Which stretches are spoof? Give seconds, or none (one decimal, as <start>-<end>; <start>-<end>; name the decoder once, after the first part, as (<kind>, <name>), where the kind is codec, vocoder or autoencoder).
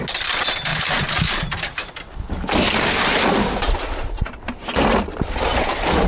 0.7-1.9 (vocoder, BigVGAN v2); 3.6-4.6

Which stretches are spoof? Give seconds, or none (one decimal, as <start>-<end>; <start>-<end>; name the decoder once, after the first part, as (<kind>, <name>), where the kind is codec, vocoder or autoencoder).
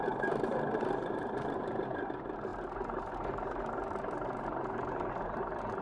none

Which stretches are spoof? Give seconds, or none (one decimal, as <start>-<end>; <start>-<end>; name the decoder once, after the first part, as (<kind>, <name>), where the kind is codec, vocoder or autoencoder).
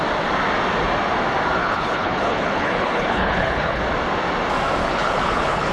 1.6-3.8 (codec, HILCodec); 4.8-5.7